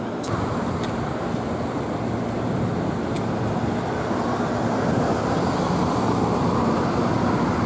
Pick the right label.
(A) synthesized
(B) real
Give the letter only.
B